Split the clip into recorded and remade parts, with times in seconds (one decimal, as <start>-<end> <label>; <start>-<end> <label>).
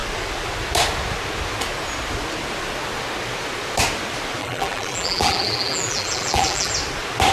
0.0-4.4 recorded; 4.4-6.7 remade; 6.7-7.3 recorded